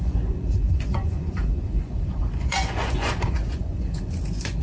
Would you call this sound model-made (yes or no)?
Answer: yes